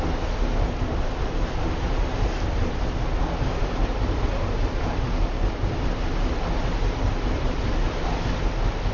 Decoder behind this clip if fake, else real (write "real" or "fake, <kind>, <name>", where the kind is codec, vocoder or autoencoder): real